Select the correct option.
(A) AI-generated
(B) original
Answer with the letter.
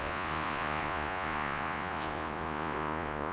A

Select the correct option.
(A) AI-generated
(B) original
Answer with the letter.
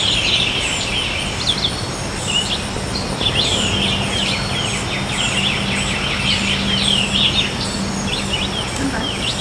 B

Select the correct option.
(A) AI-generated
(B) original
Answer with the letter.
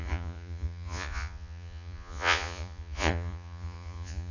A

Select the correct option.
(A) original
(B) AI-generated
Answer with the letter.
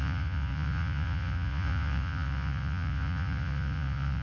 B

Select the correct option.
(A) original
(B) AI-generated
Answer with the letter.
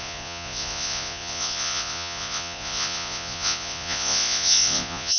B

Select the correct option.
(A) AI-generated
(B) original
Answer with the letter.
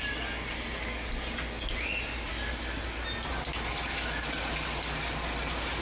B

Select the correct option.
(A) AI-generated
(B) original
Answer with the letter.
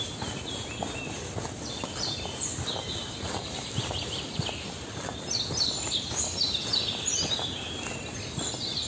B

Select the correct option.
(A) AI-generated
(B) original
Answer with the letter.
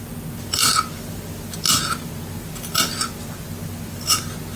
B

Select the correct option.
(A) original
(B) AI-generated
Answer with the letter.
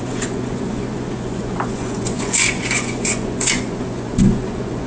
B